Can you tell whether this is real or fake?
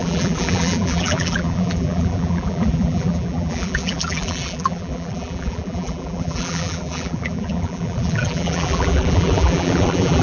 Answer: fake